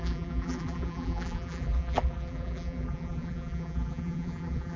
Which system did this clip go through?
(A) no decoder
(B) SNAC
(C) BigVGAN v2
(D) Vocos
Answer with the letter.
C